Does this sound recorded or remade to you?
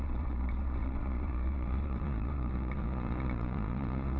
remade